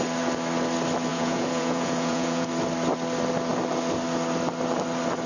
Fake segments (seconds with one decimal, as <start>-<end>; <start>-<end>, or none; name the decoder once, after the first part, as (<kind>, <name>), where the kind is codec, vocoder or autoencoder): 1.1-2.5 (vocoder, Vocos)